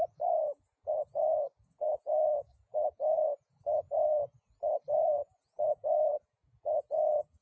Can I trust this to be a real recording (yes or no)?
no